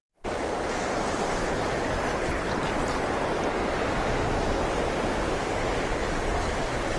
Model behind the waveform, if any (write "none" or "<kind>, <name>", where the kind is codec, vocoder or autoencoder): none